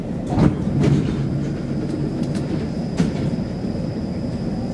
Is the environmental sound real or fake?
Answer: real